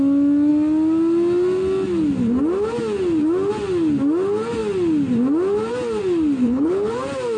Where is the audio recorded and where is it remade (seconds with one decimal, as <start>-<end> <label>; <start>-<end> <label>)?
0.0-6.4 recorded; 6.4-6.9 remade; 6.9-7.4 recorded